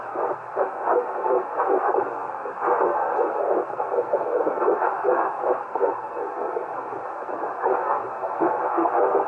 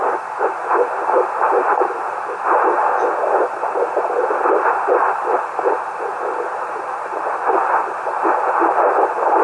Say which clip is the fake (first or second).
first